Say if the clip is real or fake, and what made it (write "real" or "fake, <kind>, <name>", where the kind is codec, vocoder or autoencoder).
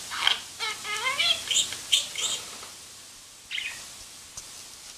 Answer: real